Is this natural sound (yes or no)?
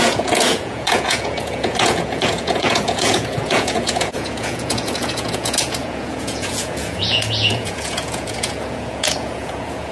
no